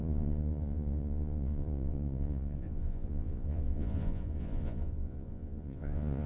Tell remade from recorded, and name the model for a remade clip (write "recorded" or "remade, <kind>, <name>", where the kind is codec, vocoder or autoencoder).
remade, vocoder, Vocos